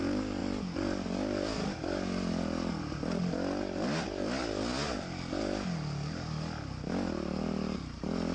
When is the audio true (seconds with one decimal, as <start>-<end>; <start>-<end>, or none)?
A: 0.0-8.3